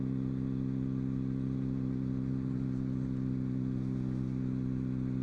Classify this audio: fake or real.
real